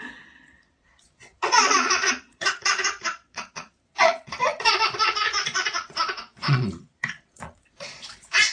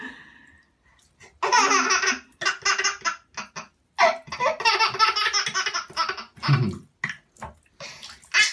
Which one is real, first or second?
second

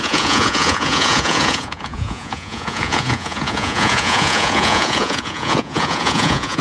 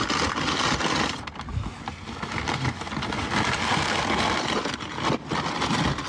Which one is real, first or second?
second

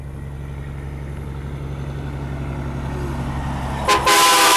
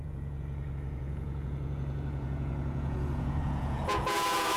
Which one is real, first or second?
first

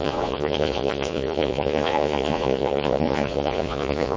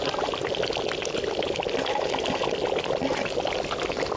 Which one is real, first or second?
second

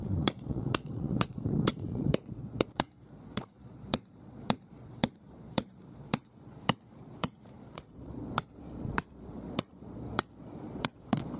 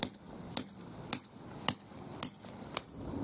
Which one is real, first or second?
second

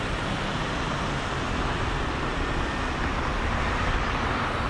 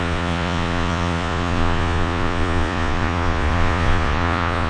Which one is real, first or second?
first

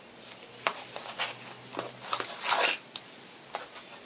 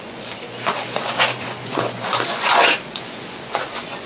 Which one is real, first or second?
first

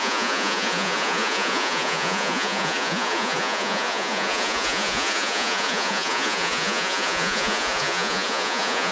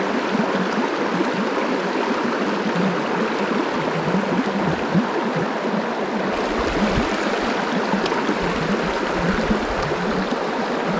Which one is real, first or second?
second